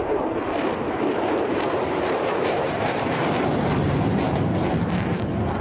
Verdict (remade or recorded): remade